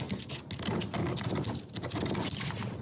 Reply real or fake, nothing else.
real